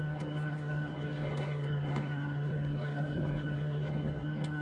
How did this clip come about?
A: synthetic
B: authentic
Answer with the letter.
A